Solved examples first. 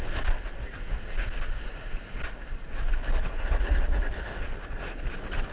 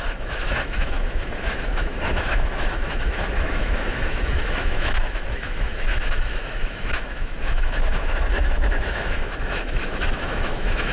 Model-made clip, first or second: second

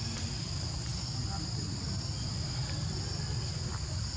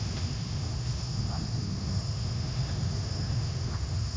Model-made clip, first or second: second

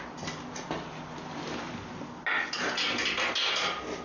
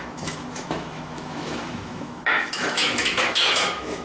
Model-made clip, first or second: second